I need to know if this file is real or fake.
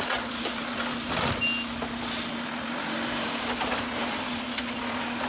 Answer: real